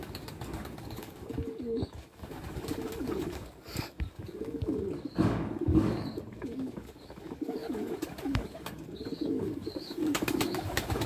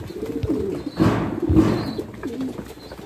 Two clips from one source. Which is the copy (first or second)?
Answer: first